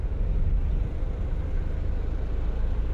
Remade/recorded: recorded